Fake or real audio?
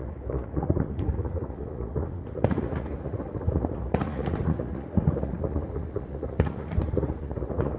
fake